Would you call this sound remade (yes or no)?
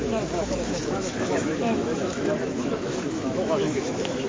yes